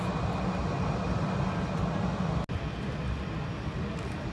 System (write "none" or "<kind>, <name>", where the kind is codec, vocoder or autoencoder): none